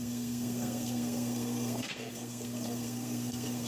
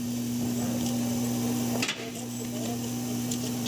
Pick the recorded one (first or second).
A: second